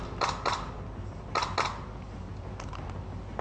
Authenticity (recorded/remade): recorded